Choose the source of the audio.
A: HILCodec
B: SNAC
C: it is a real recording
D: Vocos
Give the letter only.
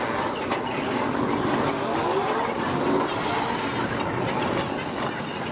C